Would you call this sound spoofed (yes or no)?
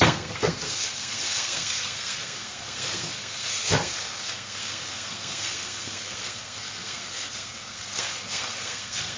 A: yes